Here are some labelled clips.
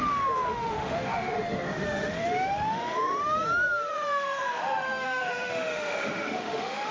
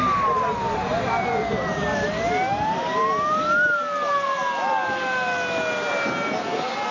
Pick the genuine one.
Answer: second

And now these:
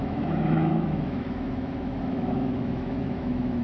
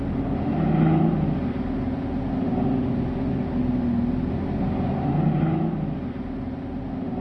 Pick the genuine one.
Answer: second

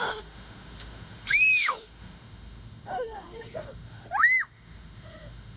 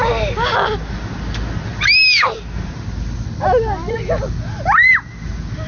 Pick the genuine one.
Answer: second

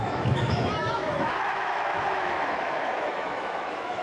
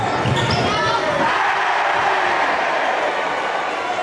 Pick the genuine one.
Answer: second